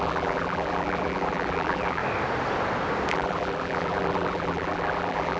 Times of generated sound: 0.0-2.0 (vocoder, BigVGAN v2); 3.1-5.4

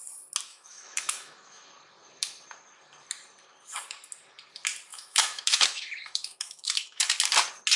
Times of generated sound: 0.5-1.7 (autoencoder, DAC-VAE); 4.9-7.1

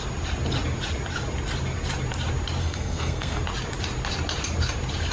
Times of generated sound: 2.6-3.4 (codec, SNAC)

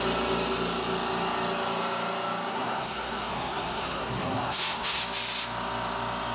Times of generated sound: 2.5-5.0 (codec, SNAC)

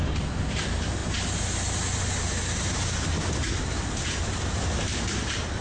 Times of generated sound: 0.0-1.0 (vocoder, BigVGAN v2); 3.9-5.6